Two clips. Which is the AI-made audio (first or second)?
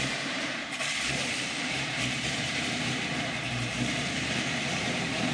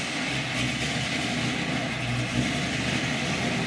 first